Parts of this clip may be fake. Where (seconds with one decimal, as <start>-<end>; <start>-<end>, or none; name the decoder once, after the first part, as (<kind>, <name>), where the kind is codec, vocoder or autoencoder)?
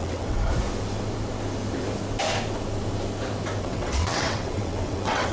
0.0-0.4 (vocoder, WaveNeXt); 3.6-5.3